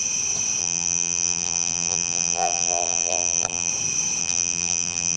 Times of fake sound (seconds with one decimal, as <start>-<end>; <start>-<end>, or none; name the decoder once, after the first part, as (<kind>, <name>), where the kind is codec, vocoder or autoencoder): 0.6-3.7 (vocoder, BigVGAN v2); 4.2-5.2